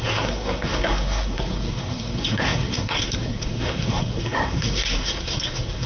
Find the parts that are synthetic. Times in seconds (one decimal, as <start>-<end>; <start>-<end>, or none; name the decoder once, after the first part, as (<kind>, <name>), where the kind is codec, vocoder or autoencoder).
0.0-5.9 (codec, SNAC)